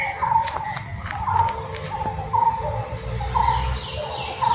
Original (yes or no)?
yes